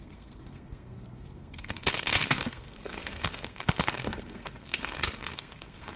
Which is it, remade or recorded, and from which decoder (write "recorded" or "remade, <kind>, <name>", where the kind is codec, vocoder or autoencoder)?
remade, codec, SNAC